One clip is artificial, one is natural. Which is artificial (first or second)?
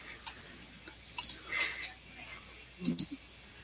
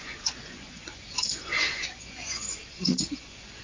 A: second